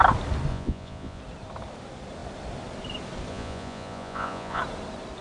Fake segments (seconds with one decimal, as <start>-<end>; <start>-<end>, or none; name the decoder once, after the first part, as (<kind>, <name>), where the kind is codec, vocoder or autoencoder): 0.5-1.2 (vocoder, Vocos); 3.3-4.6